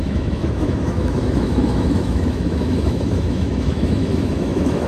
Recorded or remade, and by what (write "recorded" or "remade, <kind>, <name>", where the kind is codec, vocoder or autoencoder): remade, autoencoder, DAC-VAE